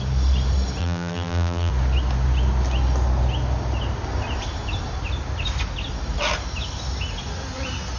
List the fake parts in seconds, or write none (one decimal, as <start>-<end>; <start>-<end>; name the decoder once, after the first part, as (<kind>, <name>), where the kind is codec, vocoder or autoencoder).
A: 0.8-1.7 (vocoder, BigVGAN v2)

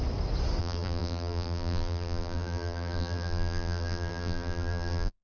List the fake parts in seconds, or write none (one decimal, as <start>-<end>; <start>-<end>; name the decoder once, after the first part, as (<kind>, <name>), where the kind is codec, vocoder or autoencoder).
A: 0.6-5.2 (vocoder, BigVGAN v2)

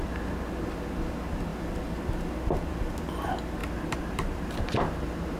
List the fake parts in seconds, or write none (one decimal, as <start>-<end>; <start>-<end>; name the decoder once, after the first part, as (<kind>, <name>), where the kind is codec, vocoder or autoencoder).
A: 3.6-5.4 (vocoder, BigVGAN v2)

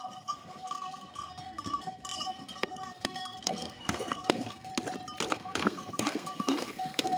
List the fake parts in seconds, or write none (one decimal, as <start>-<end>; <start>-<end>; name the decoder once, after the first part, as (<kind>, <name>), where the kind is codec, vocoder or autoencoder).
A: 0.0-4.7 (codec, SNAC); 5.3-7.2

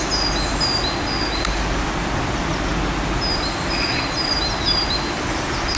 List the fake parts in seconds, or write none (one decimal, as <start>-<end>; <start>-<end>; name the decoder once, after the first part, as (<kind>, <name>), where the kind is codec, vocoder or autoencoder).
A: none

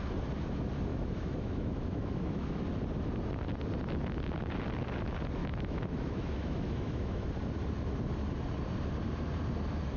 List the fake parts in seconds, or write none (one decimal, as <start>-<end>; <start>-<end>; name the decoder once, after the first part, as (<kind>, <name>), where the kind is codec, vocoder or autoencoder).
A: 0.9-2.6 (autoencoder, DAC-VAE); 5.4-7.3

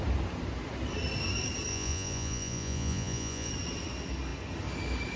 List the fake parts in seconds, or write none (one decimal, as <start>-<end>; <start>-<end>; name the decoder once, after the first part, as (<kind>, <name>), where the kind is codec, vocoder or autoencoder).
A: 1.7-3.5 (vocoder, Vocos)

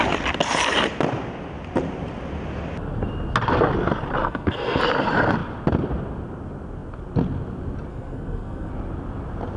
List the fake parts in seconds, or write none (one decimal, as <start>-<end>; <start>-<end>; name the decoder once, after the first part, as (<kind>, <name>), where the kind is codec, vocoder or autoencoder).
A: 4.2-4.8 (codec, SNAC); 7.9-8.7